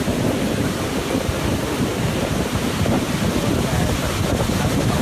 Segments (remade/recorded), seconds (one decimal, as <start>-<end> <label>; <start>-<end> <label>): 0.0-1.9 recorded; 1.9-3.3 remade; 3.3-5.0 recorded